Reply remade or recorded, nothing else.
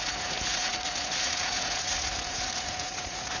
remade